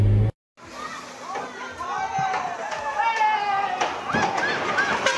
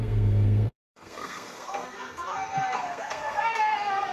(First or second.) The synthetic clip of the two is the second